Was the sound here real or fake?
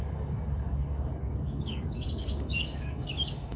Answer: fake